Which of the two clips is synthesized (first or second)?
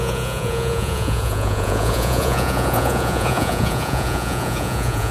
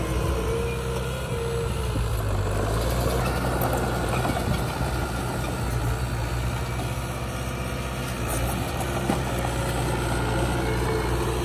first